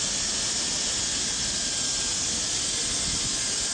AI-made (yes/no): no